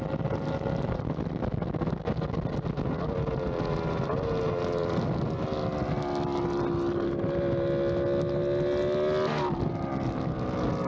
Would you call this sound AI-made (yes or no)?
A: no